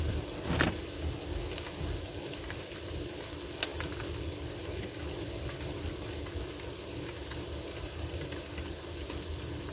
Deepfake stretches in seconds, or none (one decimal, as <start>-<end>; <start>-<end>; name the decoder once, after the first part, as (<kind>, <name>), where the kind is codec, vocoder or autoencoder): none